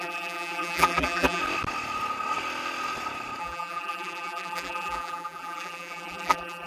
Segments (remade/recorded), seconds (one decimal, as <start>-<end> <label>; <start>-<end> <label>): 0.0-1.4 remade; 1.4-3.4 recorded; 3.4-6.7 remade